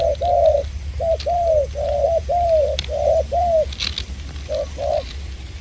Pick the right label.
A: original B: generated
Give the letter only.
A